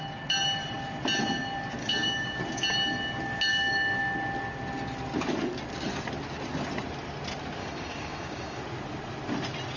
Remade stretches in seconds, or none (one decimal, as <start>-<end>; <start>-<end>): 1.8-2.4; 3.5-4.0; 7.6-8.6